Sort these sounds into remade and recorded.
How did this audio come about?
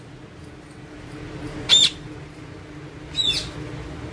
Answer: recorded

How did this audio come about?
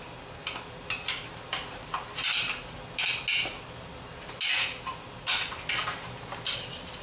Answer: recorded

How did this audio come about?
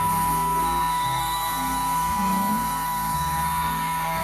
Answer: remade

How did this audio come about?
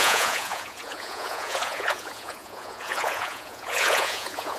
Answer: remade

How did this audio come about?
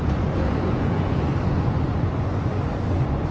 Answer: remade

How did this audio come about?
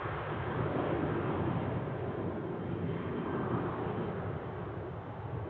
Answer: recorded